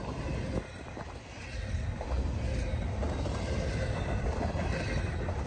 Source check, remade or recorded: recorded